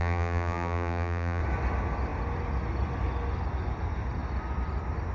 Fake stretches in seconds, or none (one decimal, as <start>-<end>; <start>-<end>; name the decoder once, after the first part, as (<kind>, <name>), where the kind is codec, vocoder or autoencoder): 0.0-1.4 (vocoder, BigVGAN v2)